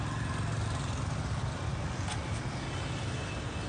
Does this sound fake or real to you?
real